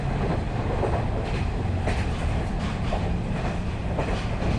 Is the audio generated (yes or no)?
yes